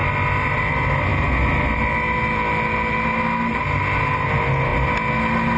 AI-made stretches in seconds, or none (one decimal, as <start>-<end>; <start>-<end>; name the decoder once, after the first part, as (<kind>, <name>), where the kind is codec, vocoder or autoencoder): 0.0-0.6 (vocoder, BigVGAN v2)